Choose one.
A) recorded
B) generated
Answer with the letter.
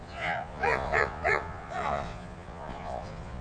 B